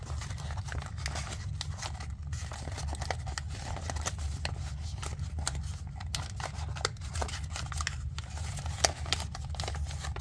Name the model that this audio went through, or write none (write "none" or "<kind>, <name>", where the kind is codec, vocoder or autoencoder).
none